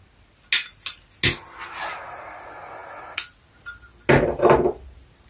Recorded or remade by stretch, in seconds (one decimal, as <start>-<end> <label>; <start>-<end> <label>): 0.0-5.3 recorded